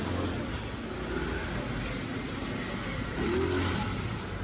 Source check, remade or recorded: recorded